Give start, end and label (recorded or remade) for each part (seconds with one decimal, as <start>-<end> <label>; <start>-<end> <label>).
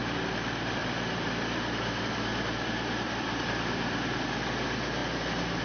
0.0-0.8 recorded; 0.8-4.2 remade; 4.2-5.6 recorded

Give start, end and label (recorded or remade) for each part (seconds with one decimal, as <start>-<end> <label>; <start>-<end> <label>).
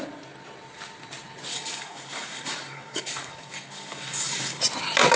0.0-1.5 recorded; 1.5-4.6 remade; 4.6-5.2 recorded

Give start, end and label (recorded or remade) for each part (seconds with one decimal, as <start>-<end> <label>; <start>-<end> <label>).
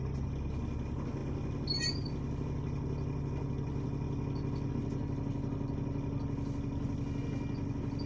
0.0-8.1 recorded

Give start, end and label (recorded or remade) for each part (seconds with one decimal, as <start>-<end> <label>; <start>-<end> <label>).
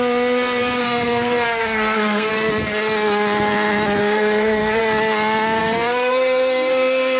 0.0-2.3 remade; 2.3-4.0 recorded; 4.0-4.8 remade; 4.8-5.6 recorded; 5.6-7.2 remade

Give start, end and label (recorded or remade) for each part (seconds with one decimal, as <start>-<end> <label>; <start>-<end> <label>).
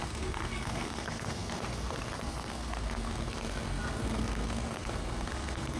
0.0-5.8 remade